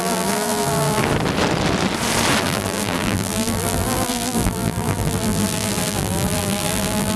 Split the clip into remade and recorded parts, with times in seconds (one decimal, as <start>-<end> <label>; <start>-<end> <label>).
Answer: 0.0-1.0 remade; 1.0-2.4 recorded; 2.4-7.2 remade